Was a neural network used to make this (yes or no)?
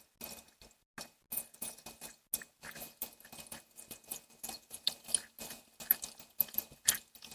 no